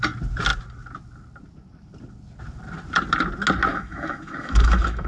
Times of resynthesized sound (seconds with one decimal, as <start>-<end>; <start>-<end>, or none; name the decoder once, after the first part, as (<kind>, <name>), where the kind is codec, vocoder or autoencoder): 3.7-5.1 (autoencoder, DAC-VAE)